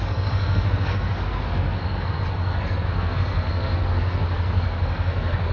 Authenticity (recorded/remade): remade